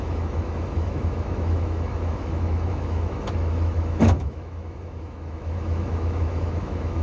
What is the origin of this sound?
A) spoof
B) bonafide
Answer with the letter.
A